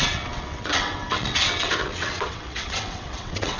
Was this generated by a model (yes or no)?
yes